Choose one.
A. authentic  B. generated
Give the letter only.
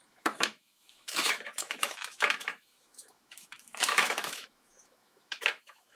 B